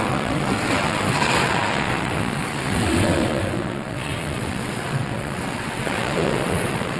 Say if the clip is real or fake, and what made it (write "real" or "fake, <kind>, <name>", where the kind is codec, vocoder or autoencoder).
fake, vocoder, WaveNeXt